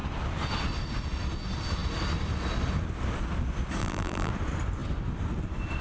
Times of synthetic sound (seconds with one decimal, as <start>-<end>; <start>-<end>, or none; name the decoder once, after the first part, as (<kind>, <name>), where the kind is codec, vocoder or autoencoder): 3.8-4.3 (vocoder, BigVGAN v2)